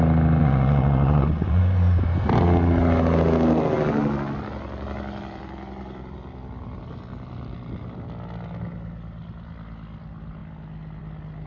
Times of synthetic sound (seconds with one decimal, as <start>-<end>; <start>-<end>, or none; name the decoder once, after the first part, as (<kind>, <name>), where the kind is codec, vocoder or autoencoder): 0.4-1.6 (vocoder, Vocos)